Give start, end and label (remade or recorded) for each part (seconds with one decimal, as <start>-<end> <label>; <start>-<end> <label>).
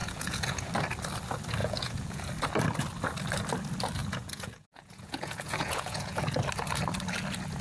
0.0-0.7 remade; 0.7-1.6 recorded; 1.6-2.3 remade; 2.3-4.0 recorded; 4.0-6.2 remade; 6.2-7.6 recorded